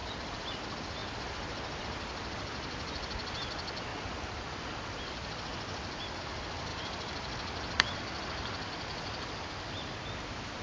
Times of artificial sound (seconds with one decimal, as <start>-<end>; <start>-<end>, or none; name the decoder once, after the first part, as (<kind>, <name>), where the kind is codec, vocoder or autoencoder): 0.0-0.6 (vocoder, BigVGAN v2); 6.7-8.0